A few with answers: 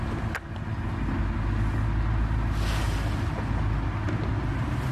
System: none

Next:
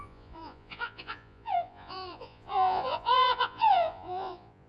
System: vocoder, Vocos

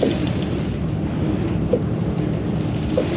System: none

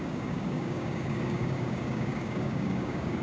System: codec, DAC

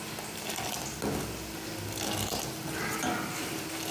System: none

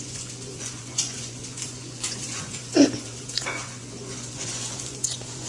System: vocoder, Vocos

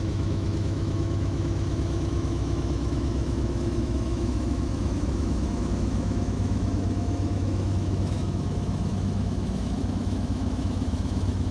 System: autoencoder, DAC-VAE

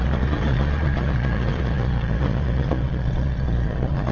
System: vocoder, Vocos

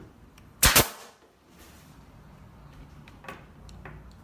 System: none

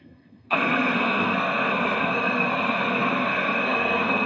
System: codec, SNAC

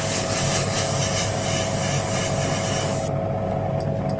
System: none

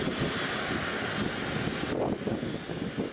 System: none